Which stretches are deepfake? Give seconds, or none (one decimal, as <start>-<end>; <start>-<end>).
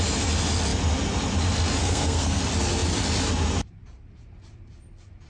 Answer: 1.8-2.4